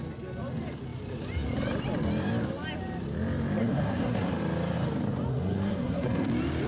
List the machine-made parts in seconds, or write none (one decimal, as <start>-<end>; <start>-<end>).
3.6-4.3; 5.3-6.3